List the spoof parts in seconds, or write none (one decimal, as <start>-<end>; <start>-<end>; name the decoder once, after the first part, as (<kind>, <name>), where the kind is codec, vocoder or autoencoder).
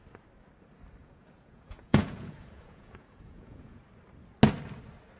1.0-3.8 (vocoder, Vocos)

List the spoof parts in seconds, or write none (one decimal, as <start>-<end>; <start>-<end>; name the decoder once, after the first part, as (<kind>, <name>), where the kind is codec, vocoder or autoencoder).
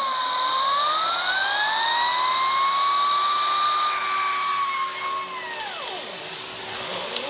none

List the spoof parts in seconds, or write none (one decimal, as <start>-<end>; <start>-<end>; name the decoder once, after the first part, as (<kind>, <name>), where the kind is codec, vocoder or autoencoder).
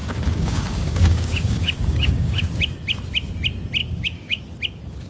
0.0-2.5 (codec, DAC); 3.8-4.4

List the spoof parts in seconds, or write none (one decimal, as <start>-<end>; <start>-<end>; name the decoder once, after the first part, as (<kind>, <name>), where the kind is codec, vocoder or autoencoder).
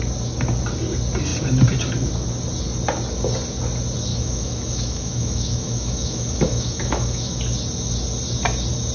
4.1-7.4 (autoencoder, DAC-VAE)